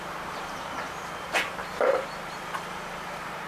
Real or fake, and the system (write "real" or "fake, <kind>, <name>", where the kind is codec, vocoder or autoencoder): fake, vocoder, BigVGAN v2